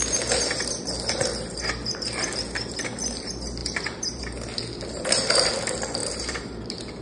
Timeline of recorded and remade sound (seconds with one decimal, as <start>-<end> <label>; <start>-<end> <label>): 0.0-3.6 recorded; 3.6-4.2 remade; 4.2-6.0 recorded; 6.0-6.6 remade; 6.6-7.0 recorded